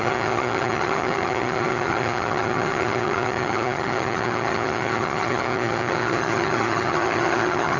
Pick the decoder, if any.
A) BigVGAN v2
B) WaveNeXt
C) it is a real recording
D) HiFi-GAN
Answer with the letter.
D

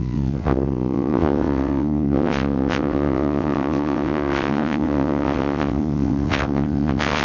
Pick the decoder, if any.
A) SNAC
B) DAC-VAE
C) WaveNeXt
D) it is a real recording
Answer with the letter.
C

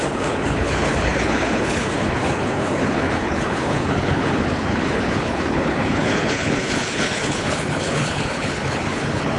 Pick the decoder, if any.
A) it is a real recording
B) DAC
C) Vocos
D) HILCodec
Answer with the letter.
D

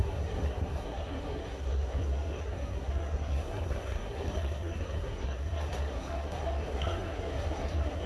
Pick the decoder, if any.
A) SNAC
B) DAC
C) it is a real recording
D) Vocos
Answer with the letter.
A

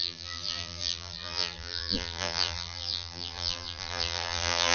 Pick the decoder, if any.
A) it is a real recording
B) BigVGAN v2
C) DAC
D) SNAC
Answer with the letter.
B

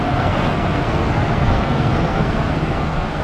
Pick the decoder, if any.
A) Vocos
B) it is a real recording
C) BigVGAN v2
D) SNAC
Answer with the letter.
D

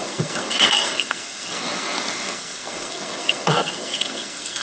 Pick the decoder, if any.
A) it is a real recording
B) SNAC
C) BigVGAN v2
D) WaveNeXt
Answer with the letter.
B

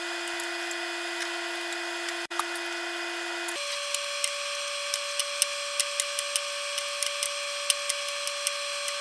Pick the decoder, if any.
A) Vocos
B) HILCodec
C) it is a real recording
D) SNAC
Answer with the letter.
C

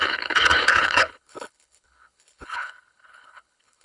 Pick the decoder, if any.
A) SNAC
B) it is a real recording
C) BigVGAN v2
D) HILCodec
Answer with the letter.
D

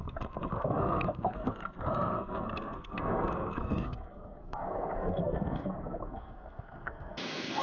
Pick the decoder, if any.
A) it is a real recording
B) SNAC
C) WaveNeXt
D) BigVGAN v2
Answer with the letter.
B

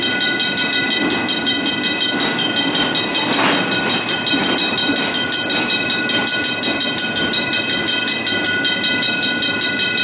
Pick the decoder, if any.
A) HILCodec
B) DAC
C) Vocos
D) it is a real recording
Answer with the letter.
D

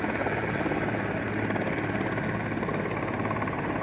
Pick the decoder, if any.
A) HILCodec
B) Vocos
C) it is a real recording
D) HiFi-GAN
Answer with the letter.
C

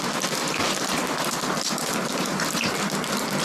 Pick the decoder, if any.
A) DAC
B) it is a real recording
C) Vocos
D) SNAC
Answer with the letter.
B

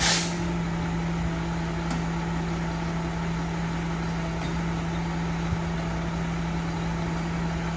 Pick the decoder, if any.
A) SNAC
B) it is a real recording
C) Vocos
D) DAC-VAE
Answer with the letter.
B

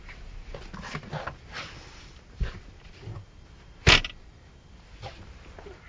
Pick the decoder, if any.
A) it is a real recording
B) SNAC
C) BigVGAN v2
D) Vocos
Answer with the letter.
A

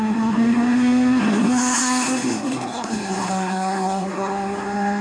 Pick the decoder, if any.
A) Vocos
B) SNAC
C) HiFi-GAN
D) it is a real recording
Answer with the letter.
B